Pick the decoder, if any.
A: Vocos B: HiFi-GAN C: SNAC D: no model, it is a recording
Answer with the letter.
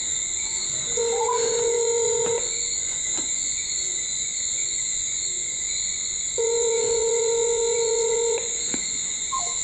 A